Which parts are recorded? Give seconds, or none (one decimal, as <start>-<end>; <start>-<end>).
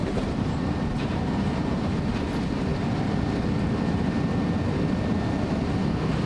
2.1-6.3